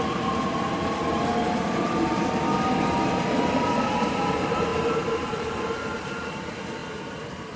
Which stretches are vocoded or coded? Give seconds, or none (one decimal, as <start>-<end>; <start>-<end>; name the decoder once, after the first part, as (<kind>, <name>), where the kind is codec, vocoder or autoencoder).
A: 0.0-7.6 (vocoder, BigVGAN v2)